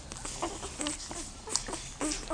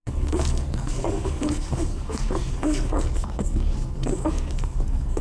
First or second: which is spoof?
second